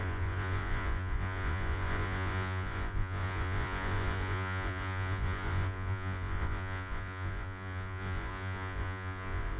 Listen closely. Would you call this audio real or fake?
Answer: fake